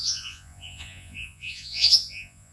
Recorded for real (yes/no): no